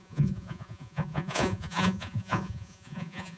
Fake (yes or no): yes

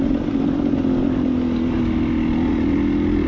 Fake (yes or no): no